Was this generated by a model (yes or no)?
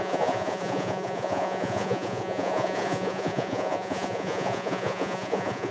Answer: yes